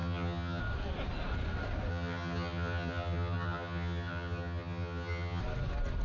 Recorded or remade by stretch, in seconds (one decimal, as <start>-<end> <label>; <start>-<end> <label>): 0.0-0.6 remade; 0.6-1.9 recorded; 1.9-5.4 remade; 5.4-6.0 recorded